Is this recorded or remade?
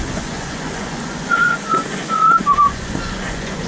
remade